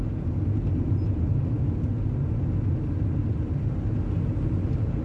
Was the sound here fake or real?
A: real